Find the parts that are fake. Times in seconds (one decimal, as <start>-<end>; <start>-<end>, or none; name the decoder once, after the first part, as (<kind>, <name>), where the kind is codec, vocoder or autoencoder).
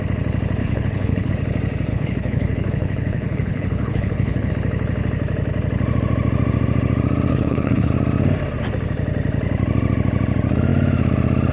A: 0.6-1.3 (codec, HILCodec); 1.9-4.5; 7.3-7.9